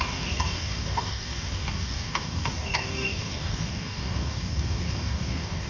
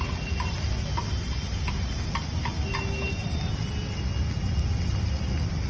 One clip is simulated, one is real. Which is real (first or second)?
second